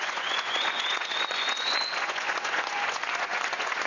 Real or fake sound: fake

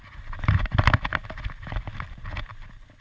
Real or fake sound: real